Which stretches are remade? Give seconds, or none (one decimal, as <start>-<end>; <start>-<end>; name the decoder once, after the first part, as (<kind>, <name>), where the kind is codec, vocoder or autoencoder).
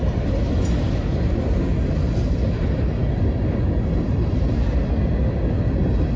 none